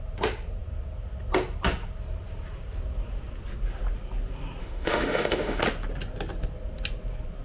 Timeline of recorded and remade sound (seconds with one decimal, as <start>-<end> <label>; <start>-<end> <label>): 0.0-4.6 recorded; 4.6-5.6 remade; 5.6-7.4 recorded